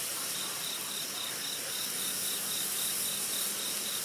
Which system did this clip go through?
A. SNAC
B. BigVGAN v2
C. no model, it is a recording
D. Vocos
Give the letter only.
C